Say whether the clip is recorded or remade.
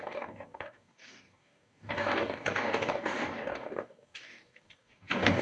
remade